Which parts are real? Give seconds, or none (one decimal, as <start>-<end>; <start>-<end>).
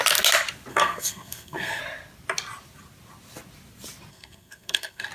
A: 0.0-0.7; 1.8-4.1